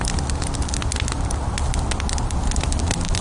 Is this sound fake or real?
real